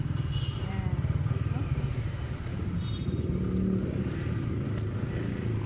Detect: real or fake real